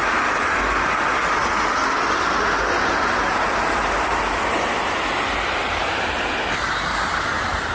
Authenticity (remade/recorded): recorded